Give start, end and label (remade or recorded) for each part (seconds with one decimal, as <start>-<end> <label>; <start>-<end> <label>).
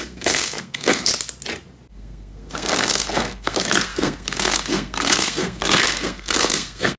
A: 0.0-1.1 remade; 1.1-1.9 recorded; 1.9-7.0 remade